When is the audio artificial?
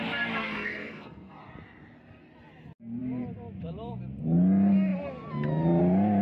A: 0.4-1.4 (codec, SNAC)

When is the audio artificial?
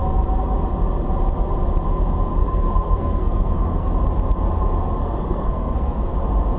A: 2.4-3.9 (codec, SNAC); 5.0-6.1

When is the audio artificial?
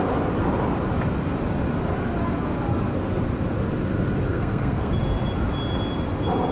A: 4.3-4.9 (codec, SNAC)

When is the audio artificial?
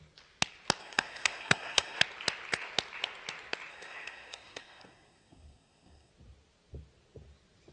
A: 0.8-2.0 (codec, SNAC); 3.7-6.1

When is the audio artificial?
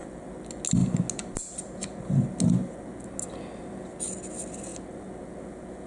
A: none